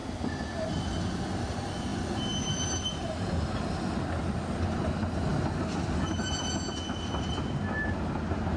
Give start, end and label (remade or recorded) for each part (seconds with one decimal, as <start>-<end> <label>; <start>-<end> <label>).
0.0-8.6 recorded